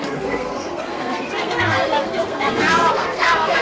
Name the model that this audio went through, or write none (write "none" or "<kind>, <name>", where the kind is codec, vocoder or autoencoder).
codec, SNAC